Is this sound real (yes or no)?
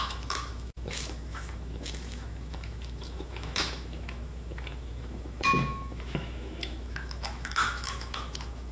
no